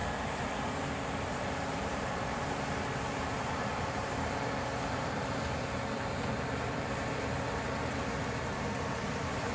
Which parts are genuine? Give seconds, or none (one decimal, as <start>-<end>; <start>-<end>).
none